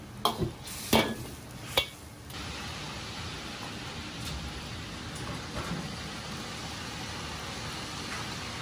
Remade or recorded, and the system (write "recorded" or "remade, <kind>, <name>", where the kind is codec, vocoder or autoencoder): recorded